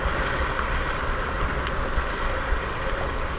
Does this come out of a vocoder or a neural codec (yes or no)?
no